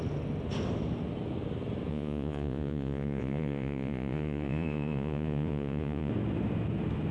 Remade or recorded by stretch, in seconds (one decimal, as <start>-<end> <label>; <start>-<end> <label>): 0.0-1.9 recorded; 1.9-6.1 remade; 6.1-7.1 recorded